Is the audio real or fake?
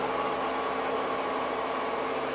real